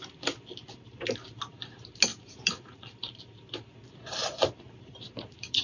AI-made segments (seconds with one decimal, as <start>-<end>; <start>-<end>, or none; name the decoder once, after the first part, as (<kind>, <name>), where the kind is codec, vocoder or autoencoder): 2.1-3.2 (vocoder, BigVGAN v2); 4.2-5.6